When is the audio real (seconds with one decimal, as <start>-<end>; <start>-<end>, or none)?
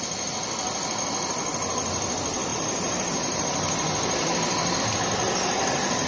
0.0-2.5; 4.8-6.1